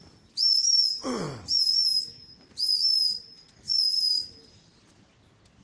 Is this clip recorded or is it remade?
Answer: recorded